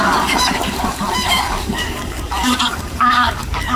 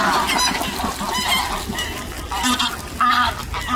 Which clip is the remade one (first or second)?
first